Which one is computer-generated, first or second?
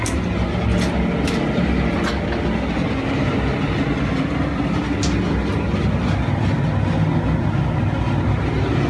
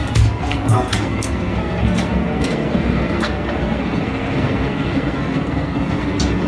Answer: second